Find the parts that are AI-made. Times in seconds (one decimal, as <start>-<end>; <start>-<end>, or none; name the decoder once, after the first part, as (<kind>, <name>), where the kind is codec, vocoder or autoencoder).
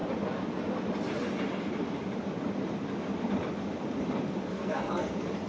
4.5-5.1 (codec, SNAC)